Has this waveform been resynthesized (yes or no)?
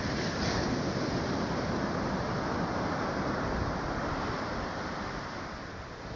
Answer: no